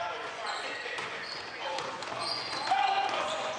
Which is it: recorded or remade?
remade